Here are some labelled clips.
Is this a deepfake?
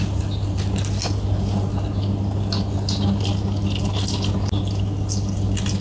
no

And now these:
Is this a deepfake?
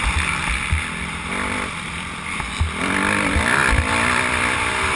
yes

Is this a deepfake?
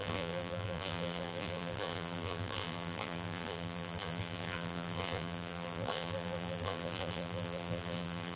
yes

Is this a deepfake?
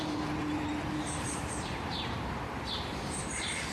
yes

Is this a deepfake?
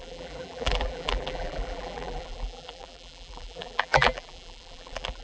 yes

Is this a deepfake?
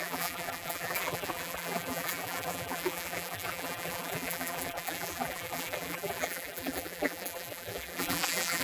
yes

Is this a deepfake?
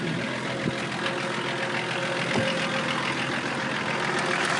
no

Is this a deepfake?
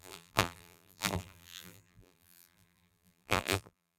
yes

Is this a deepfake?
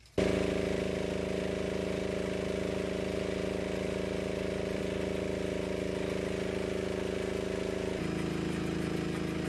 no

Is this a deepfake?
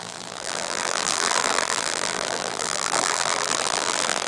yes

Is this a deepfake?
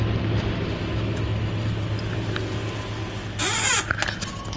no